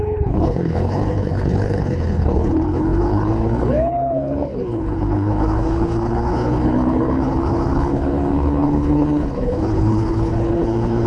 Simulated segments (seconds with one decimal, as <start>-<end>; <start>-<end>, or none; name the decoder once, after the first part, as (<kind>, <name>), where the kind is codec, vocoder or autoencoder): 0.0-11.1 (codec, HILCodec)